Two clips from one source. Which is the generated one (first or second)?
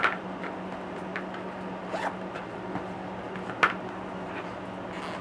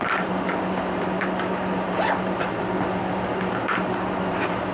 second